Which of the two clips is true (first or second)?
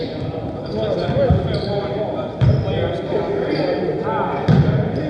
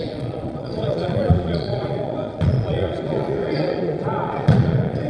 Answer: first